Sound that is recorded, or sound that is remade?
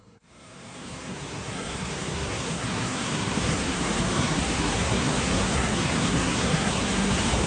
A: remade